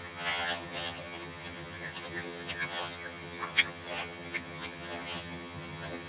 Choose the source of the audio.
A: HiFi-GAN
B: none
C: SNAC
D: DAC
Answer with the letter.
A